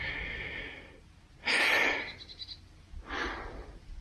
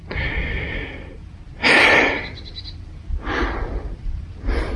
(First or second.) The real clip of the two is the first